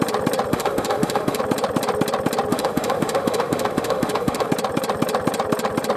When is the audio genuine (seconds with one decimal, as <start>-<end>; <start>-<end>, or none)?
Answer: 0.0-0.5; 1.4-2.5; 4.5-6.0